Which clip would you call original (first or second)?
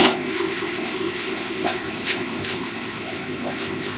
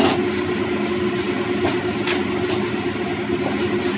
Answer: second